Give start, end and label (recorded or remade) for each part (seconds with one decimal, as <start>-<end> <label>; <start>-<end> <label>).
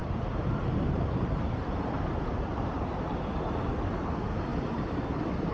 0.0-3.3 remade; 3.3-4.5 recorded; 4.5-5.5 remade